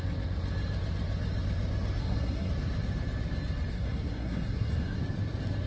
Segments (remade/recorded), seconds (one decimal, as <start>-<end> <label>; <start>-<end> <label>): 0.0-2.0 recorded; 2.0-2.5 remade; 2.5-3.7 recorded; 3.7-5.0 remade; 5.0-5.7 recorded